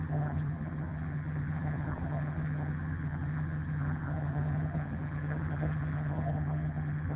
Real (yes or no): no